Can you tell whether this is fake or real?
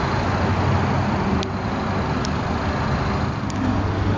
real